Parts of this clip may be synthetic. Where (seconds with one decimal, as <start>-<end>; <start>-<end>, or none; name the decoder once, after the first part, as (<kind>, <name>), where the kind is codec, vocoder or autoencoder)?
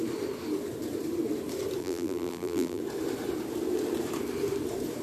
1.8-2.8 (vocoder, BigVGAN v2)